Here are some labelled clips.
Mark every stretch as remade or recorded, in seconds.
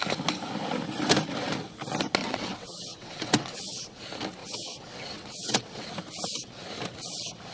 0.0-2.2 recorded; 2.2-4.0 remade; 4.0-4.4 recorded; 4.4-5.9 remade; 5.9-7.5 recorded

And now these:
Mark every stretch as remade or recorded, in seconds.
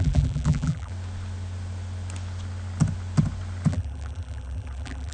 0.0-0.9 remade; 0.9-3.7 recorded; 3.7-5.1 remade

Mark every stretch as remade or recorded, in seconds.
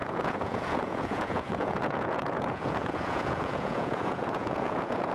0.0-5.1 remade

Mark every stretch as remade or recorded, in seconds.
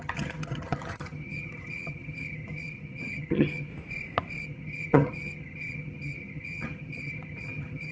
0.0-3.7 remade; 3.7-4.4 recorded; 4.4-7.9 remade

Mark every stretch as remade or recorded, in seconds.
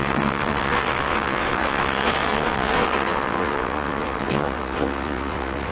0.0-5.7 remade